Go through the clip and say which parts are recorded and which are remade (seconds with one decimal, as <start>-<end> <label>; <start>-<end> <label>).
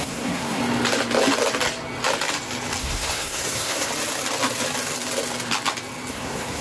0.0-0.6 remade; 0.6-2.8 recorded; 2.8-3.9 remade; 3.9-6.1 recorded; 6.1-6.6 remade